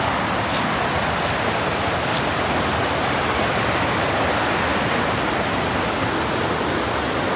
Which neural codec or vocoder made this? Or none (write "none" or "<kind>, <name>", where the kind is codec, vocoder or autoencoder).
none